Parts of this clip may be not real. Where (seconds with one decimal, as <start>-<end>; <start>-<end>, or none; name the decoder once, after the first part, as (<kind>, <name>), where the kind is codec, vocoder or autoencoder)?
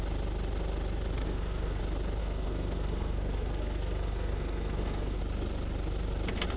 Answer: 1.2-1.8 (codec, SNAC); 2.2-5.2